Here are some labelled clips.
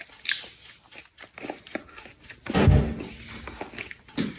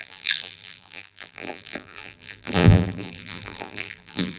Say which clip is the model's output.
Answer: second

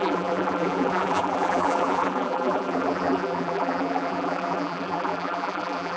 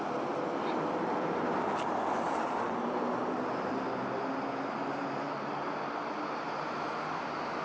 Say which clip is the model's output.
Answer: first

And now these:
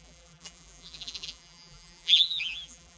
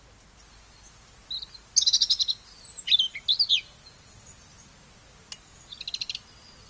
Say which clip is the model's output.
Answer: first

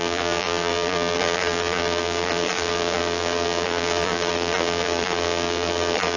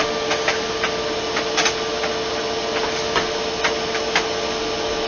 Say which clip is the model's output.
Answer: first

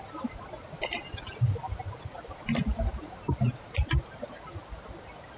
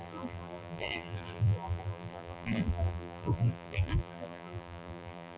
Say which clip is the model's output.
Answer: second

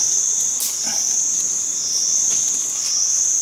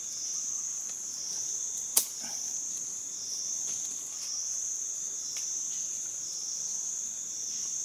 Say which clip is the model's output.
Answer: second